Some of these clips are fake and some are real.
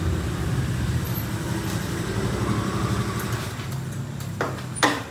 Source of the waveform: real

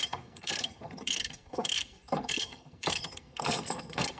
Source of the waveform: fake